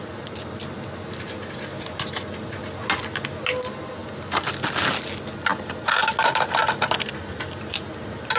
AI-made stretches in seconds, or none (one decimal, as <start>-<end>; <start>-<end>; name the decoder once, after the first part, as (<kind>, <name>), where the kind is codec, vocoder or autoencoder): none